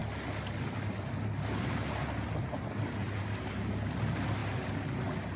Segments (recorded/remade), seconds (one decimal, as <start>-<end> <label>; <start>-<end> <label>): 0.0-5.4 recorded